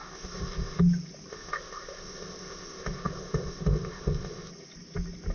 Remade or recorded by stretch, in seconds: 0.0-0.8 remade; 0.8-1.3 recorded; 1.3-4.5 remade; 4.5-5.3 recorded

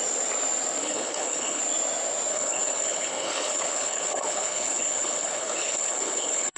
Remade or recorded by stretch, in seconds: 0.0-0.8 recorded; 0.8-1.6 remade; 1.6-2.3 recorded; 2.3-6.6 remade

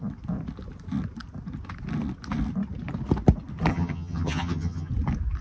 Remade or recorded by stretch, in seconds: 0.0-3.7 recorded; 3.7-4.9 remade; 4.9-5.4 recorded